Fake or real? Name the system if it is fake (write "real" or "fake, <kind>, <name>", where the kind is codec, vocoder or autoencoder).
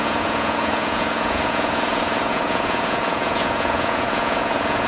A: fake, vocoder, Vocos